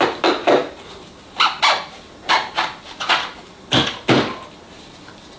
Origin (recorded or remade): recorded